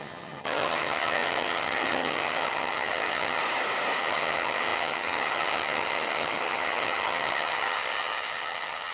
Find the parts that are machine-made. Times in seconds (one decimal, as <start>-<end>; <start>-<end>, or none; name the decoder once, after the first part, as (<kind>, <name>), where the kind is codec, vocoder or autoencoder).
0.0-3.4 (vocoder, HiFi-GAN); 4.0-8.9